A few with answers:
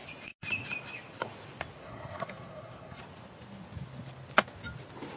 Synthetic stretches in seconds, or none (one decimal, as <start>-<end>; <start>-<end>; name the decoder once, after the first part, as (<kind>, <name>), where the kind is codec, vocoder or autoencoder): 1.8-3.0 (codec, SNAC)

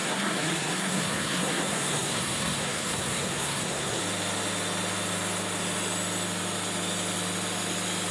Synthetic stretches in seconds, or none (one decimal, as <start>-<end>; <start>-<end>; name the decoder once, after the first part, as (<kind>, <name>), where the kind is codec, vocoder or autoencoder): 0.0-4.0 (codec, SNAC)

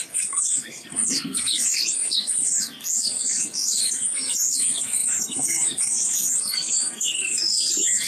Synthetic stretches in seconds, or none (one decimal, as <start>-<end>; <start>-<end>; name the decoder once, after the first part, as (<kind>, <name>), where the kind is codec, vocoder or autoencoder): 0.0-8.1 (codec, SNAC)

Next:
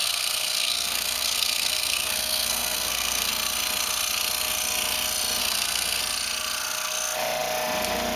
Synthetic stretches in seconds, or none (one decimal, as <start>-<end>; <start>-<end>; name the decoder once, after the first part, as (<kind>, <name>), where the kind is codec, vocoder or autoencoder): 0.0-3.3 (codec, SNAC); 5.4-6.0